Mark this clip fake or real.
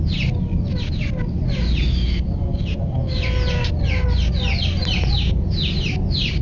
real